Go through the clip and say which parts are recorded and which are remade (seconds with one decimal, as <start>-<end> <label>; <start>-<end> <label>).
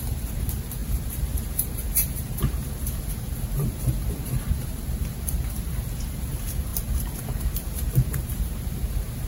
0.0-9.3 remade